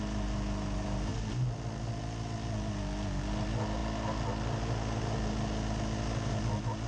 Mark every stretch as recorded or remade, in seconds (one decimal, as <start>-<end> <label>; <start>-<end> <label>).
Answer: 0.0-6.9 recorded